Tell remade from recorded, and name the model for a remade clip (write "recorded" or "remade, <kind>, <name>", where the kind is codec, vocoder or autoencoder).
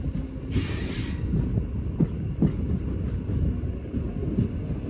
recorded